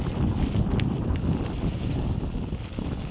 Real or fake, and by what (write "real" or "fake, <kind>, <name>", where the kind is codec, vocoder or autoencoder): real